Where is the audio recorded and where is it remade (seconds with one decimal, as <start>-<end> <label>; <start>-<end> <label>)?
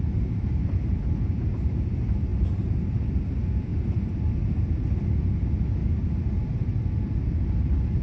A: 0.0-2.3 recorded; 2.3-3.1 remade; 3.1-5.8 recorded; 5.8-6.8 remade; 6.8-8.0 recorded